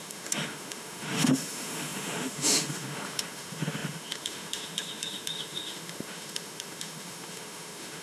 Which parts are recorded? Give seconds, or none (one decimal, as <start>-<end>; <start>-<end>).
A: none